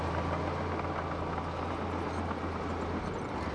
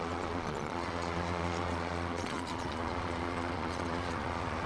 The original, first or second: first